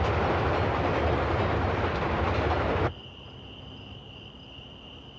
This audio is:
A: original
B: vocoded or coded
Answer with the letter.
A